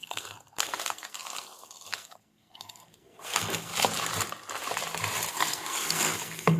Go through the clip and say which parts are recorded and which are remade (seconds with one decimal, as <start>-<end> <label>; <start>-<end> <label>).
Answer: 0.0-3.7 remade; 3.7-5.3 recorded; 5.3-6.6 remade